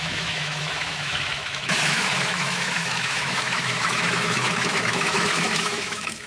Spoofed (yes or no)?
yes